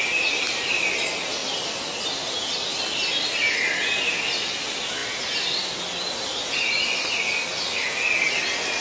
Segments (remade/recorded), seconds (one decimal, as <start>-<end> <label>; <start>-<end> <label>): 0.0-8.8 recorded